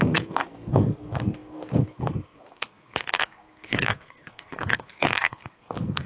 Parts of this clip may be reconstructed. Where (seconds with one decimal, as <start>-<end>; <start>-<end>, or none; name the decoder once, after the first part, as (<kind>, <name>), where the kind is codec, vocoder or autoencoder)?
0.0-6.1 (codec, SNAC)